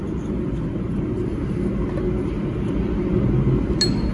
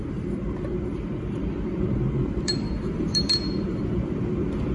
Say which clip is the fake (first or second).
second